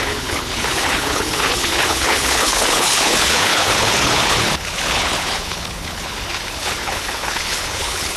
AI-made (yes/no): yes